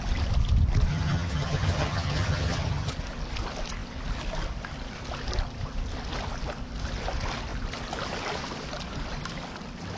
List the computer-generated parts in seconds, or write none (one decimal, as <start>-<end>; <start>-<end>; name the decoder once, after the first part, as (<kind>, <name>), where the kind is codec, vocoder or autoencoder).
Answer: 0.9-2.9 (vocoder, HiFi-GAN)